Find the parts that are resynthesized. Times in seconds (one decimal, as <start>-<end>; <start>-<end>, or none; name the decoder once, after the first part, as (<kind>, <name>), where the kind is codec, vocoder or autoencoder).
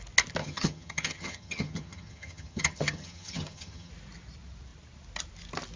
0.4-3.9 (vocoder, HiFi-GAN)